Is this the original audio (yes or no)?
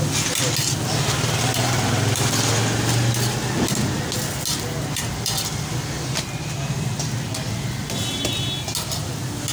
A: yes